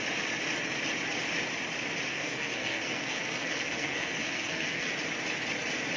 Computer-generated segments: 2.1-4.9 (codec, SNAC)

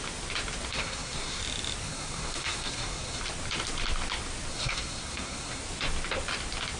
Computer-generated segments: 0.7-1.4 (codec, SNAC); 1.8-3.2; 4.5-5.6